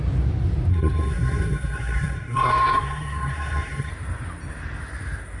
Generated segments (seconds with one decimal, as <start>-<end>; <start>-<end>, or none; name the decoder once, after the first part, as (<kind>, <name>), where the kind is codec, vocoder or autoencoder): 0.7-3.9 (codec, SNAC)